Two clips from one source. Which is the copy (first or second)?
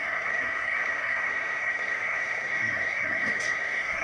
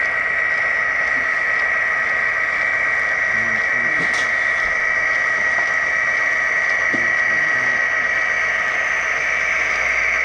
first